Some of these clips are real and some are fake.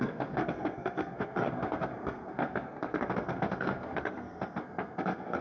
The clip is fake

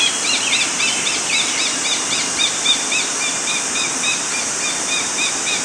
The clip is fake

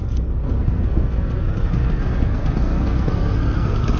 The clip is fake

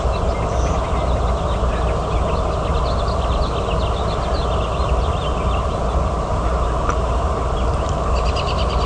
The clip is real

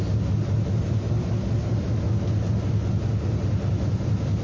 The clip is real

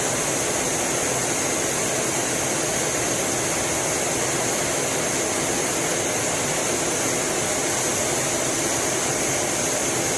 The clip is real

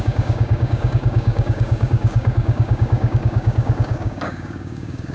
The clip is fake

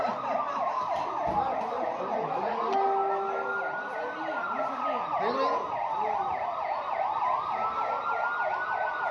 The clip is real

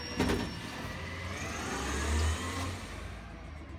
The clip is real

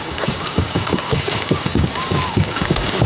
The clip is fake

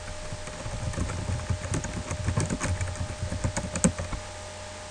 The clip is real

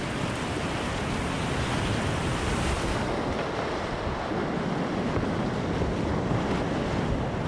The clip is real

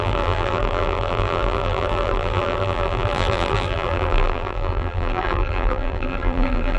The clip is fake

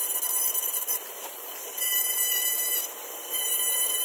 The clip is fake